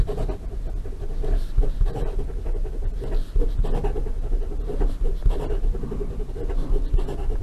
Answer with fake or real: real